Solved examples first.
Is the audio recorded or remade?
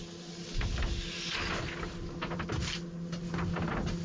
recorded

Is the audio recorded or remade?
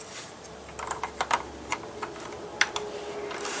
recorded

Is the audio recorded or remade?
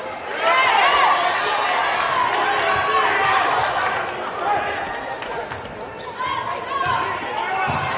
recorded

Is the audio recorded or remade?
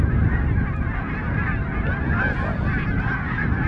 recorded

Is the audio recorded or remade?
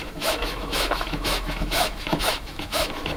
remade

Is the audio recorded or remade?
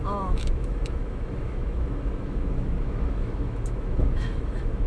remade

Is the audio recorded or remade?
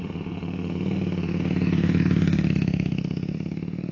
remade